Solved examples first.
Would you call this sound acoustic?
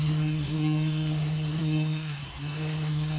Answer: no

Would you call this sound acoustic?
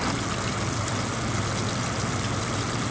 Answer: yes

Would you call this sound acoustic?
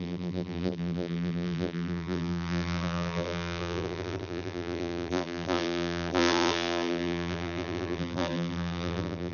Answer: no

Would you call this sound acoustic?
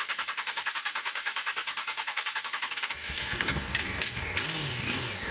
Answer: no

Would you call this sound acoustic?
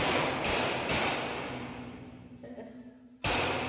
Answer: yes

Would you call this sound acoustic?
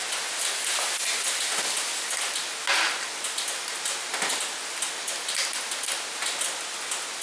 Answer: yes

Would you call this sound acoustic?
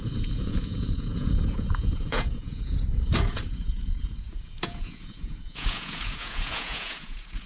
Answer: no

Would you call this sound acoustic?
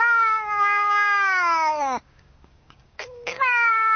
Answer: no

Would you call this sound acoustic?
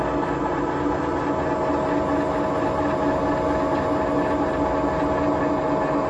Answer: yes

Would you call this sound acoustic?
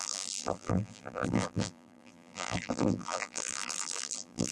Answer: no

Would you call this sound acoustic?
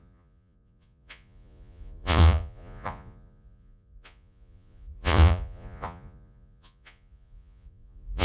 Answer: no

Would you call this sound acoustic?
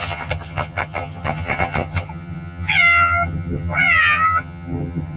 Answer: no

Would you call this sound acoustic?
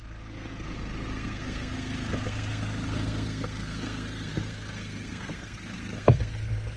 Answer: no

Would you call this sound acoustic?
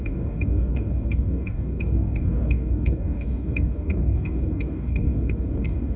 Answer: no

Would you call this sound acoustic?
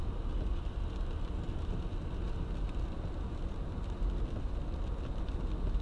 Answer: yes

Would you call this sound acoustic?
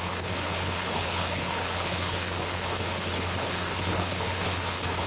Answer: no